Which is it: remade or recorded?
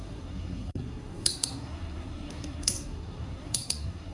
remade